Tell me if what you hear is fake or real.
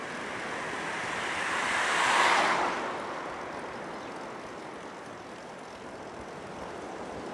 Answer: real